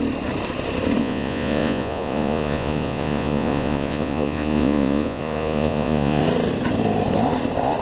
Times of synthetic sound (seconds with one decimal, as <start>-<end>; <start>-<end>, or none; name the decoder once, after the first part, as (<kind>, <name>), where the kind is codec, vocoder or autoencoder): 1.0-6.2 (vocoder, Vocos)